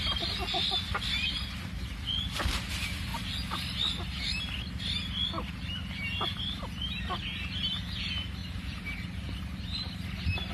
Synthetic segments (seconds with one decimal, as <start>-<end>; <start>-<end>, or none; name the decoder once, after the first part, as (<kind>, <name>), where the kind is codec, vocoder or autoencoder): 8.4-10.5 (vocoder, BigVGAN v2)